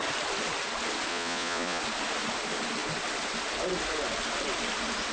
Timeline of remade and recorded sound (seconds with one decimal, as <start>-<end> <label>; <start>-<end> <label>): 0.0-1.1 recorded; 1.1-1.8 remade; 1.8-5.1 recorded